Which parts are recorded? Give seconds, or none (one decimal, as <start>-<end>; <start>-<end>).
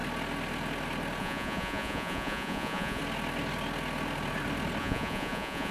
0.0-1.2; 3.0-4.8